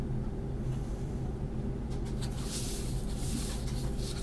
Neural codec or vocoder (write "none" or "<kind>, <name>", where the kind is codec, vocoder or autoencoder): vocoder, BigVGAN v2